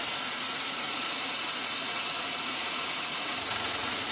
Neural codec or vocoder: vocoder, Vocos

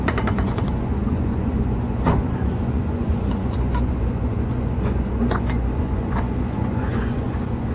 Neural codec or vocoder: vocoder, Vocos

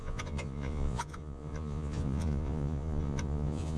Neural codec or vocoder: vocoder, Vocos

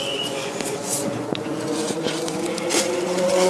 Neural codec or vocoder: vocoder, Vocos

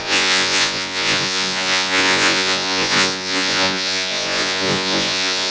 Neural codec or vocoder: vocoder, Vocos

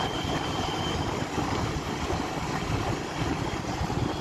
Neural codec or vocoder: none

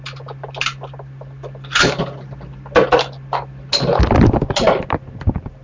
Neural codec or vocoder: none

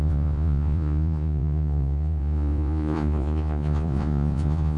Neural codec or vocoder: vocoder, Vocos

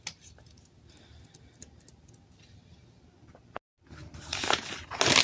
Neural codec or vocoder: none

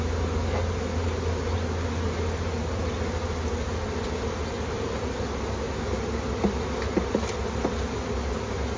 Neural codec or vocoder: none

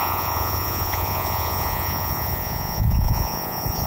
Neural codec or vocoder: vocoder, Vocos